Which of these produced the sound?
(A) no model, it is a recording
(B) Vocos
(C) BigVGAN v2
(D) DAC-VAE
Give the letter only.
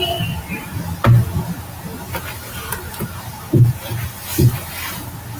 A